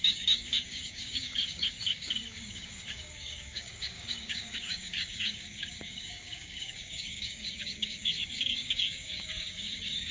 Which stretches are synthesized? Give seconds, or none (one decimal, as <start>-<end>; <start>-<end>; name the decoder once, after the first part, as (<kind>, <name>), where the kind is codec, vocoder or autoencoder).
0.0-10.1 (codec, DAC)